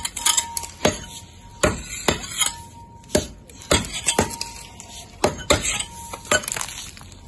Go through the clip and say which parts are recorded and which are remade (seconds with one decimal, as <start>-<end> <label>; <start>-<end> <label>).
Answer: 0.0-7.3 recorded